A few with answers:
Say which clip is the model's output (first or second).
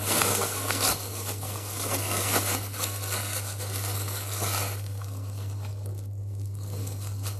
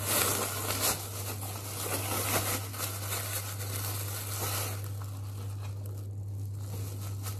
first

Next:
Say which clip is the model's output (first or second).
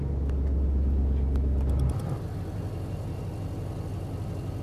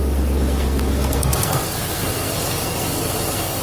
second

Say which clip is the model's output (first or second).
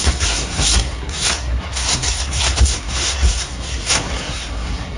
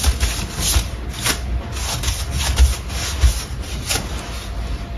first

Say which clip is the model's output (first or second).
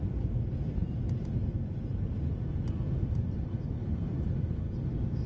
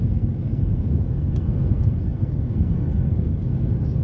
second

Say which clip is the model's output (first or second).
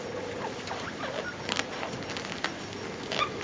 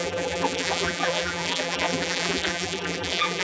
second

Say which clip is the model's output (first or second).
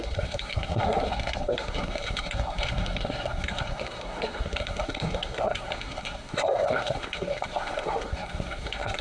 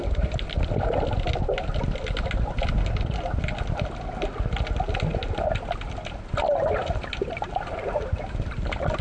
first